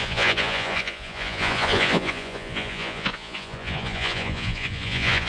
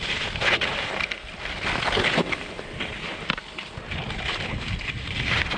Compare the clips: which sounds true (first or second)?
second